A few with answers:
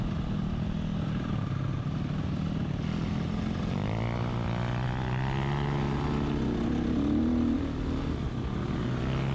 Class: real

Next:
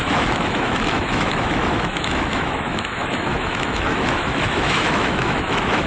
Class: fake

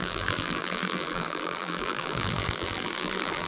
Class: fake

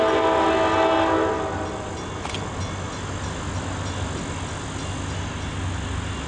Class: real